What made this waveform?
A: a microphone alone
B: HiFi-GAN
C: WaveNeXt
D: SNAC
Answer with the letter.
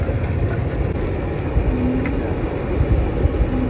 A